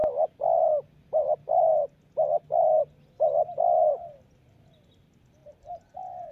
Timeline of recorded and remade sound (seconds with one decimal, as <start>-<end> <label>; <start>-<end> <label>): 0.0-5.4 recorded; 5.4-6.3 remade